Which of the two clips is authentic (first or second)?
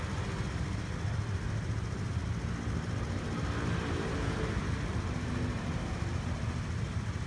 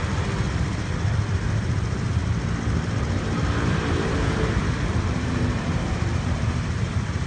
first